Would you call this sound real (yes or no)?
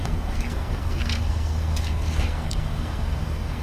no